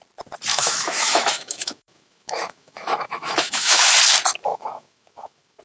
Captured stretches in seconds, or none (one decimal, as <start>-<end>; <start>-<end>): 0.0-0.5; 3.9-4.5